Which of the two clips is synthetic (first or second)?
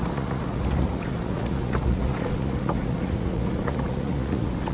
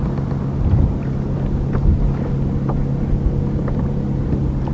first